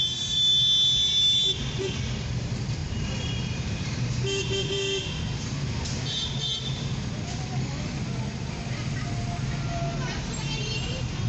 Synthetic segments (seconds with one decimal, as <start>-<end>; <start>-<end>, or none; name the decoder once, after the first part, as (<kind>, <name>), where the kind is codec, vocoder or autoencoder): 2.8-5.1 (vocoder, BigVGAN v2)